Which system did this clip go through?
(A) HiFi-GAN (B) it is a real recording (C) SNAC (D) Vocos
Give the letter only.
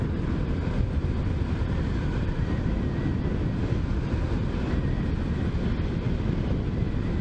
B